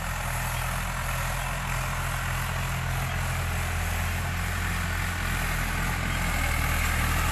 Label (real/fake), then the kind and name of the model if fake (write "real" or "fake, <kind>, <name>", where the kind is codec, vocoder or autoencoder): real